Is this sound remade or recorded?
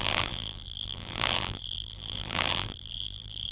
remade